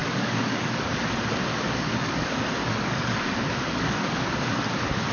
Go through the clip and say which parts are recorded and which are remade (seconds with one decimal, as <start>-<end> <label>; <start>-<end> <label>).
0.0-0.9 remade; 0.9-1.5 recorded; 1.5-4.6 remade; 4.6-5.1 recorded